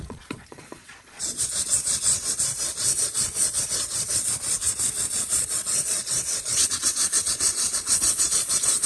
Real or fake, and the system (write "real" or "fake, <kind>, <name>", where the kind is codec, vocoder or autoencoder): fake, vocoder, Vocos